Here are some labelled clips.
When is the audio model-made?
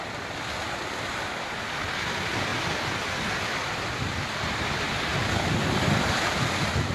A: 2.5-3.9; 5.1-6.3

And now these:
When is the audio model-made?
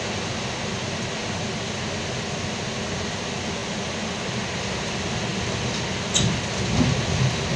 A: none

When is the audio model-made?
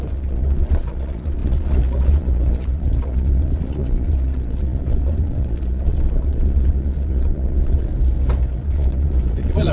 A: 0.0-7.9; 8.5-9.7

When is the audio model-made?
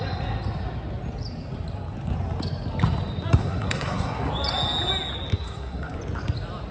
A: 3.4-4.3; 5.3-6.0